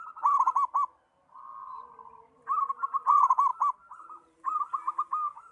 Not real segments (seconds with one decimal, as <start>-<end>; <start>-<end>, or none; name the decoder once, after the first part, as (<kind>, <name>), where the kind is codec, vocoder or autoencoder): 3.5-5.5 (vocoder, BigVGAN v2)